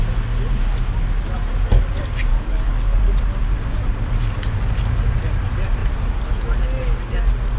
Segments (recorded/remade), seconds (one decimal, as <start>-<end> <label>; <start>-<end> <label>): 0.0-2.3 recorded; 2.3-3.0 remade; 3.0-7.6 recorded